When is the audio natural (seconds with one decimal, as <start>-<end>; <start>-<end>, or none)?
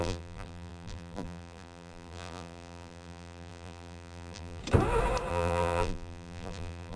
4.6-5.3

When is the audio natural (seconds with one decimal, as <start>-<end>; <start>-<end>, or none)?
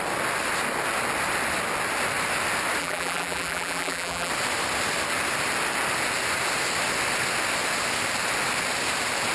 0.0-2.8; 4.3-9.3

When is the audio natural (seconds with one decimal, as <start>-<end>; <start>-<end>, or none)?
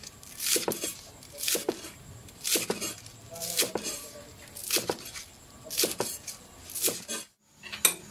0.0-8.1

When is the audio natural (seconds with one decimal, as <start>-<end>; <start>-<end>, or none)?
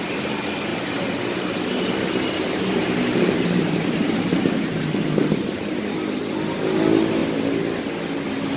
0.0-0.7; 5.8-8.6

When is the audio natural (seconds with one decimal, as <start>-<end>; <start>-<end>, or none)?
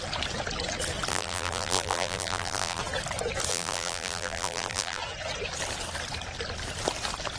0.0-1.1; 2.8-3.5; 5.0-7.4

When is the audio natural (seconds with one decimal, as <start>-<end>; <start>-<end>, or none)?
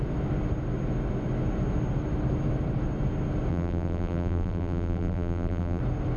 0.0-3.5; 5.8-6.2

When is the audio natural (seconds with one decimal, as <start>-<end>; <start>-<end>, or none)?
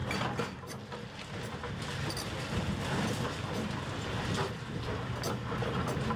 0.0-6.2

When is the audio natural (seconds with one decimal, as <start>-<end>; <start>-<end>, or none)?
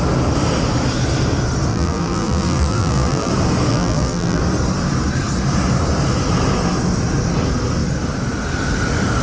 0.0-1.7; 3.3-3.7; 4.4-9.2